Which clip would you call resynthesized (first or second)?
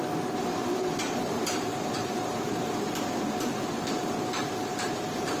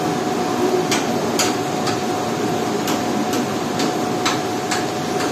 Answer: first